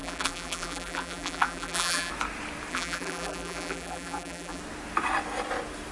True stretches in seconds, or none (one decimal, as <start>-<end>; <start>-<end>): 2.1-2.7; 4.6-5.9

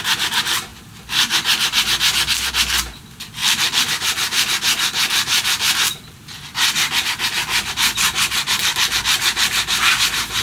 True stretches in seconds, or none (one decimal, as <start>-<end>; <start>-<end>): 0.0-3.4; 3.9-5.1; 6.2-8.6; 9.8-10.4

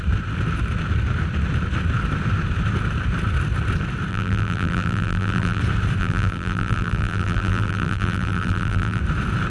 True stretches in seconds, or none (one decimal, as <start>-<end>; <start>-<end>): 0.0-4.1; 5.6-6.0; 9.0-9.5

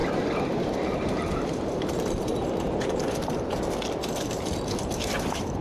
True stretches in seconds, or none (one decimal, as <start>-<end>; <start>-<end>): 3.4-4.0

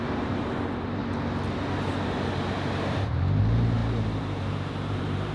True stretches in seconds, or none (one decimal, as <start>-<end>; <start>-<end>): 1.0-3.4

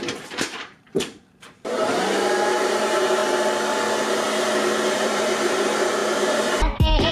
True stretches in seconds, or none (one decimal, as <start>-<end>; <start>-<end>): 3.2-4.9

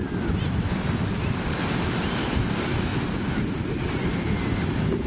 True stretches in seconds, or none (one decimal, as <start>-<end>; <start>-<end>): 0.0-2.9; 4.6-5.1

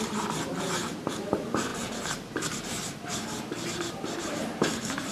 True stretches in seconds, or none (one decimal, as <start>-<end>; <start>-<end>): none